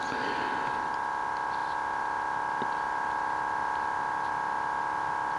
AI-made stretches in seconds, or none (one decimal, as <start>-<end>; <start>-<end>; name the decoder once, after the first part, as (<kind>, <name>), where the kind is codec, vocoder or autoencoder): none